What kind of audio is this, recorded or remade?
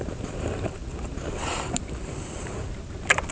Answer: recorded